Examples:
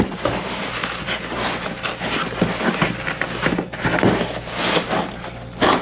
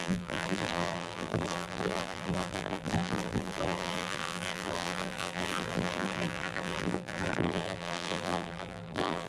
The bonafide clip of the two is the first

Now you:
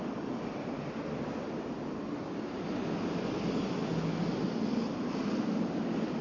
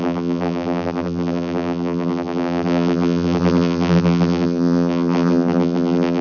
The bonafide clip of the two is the first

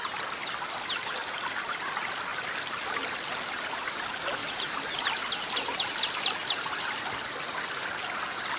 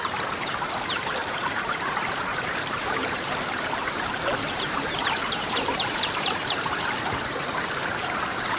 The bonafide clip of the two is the first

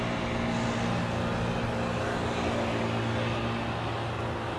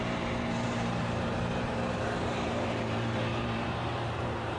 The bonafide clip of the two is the first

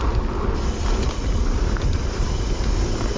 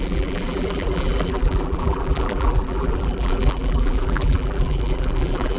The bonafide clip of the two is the first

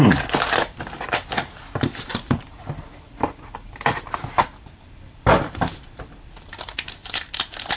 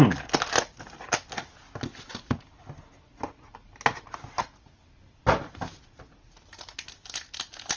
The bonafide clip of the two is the second